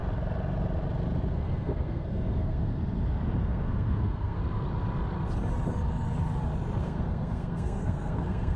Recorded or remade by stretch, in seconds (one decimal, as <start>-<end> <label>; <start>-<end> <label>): 0.0-1.3 recorded; 1.3-2.8 remade; 2.8-3.4 recorded; 3.4-4.4 remade; 4.4-6.8 recorded; 6.8-8.6 remade